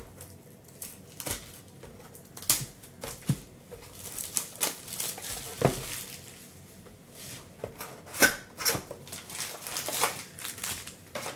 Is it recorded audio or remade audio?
recorded